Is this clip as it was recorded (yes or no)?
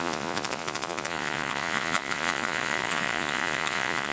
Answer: no